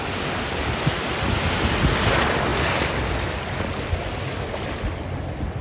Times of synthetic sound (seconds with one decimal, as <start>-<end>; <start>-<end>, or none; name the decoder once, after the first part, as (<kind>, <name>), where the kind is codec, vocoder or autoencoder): none